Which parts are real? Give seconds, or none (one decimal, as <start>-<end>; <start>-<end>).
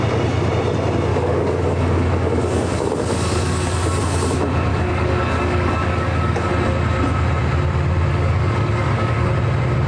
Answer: 0.0-1.1; 4.0-4.7; 6.5-8.1; 9.3-9.9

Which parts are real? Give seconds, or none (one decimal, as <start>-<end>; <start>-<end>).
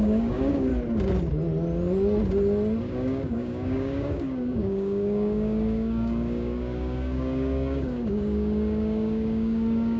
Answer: 0.7-2.8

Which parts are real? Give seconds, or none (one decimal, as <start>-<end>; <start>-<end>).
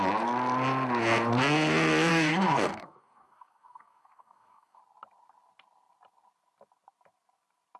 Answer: 0.0-2.1; 4.8-7.8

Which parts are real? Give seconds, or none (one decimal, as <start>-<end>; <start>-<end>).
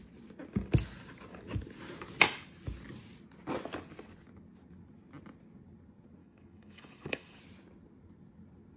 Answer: 0.0-6.2; 7.4-8.8